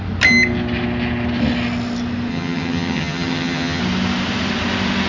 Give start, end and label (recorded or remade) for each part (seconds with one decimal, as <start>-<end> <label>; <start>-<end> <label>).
0.0-2.3 recorded; 2.3-3.8 remade; 3.8-5.1 recorded